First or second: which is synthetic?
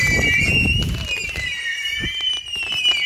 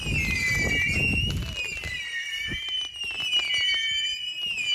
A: first